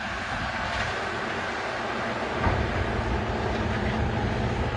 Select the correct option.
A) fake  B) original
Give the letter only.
B